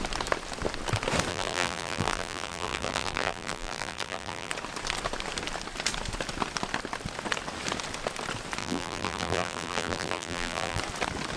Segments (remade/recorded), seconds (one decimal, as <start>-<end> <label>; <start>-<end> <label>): 0.0-1.3 recorded; 1.3-4.5 remade; 4.5-8.6 recorded; 8.6-10.8 remade; 10.8-11.4 recorded